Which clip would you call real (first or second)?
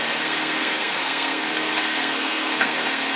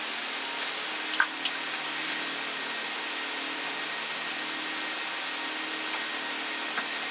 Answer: second